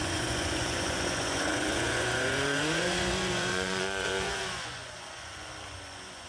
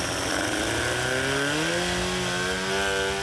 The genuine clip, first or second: second